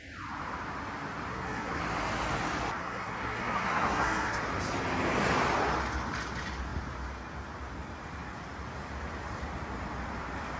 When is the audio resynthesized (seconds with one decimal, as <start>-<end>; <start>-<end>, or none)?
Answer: 1.3-1.8; 2.8-4.4